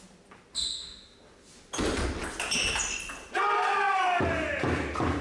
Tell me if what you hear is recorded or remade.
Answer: recorded